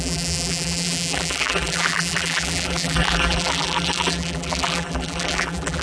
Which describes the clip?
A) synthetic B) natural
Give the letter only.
A